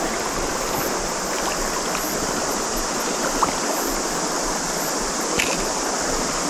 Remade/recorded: recorded